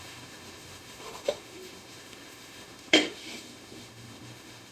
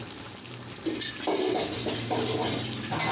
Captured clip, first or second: second